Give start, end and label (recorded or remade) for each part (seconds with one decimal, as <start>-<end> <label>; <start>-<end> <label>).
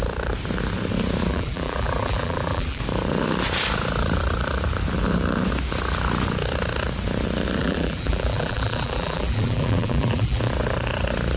0.0-1.3 recorded; 1.3-2.8 remade; 2.8-7.6 recorded; 7.6-10.5 remade; 10.5-11.4 recorded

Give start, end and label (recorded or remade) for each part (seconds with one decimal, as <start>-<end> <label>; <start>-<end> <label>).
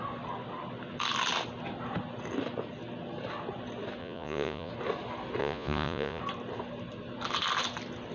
0.0-4.0 recorded; 4.0-4.7 remade; 4.7-5.4 recorded; 5.4-6.2 remade; 6.2-8.1 recorded